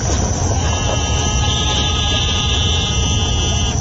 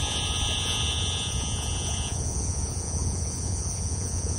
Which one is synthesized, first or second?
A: second